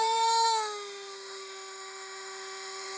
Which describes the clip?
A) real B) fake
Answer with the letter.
B